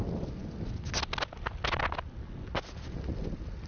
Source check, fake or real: real